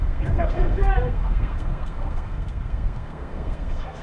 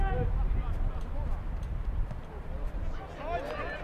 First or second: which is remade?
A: first